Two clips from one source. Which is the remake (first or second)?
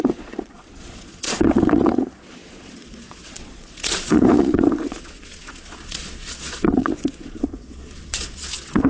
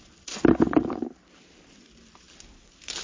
first